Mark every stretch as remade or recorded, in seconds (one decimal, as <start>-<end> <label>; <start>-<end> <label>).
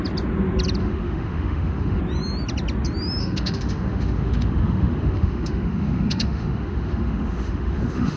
0.0-0.8 recorded; 0.8-2.0 remade; 2.0-3.2 recorded; 3.2-8.2 remade